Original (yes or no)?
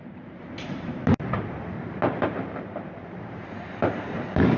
no